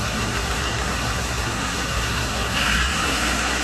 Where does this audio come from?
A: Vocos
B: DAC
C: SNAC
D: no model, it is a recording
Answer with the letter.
C